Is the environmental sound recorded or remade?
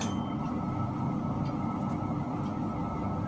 recorded